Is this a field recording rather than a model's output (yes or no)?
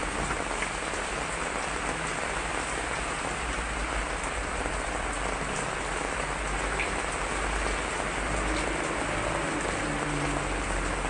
yes